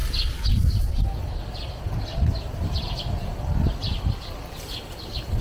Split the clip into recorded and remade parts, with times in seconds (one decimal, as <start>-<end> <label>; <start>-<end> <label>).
0.0-5.4 recorded